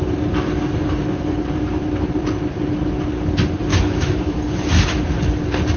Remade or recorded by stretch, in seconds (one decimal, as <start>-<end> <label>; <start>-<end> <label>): 0.0-3.7 recorded; 3.7-4.4 remade; 4.4-5.8 recorded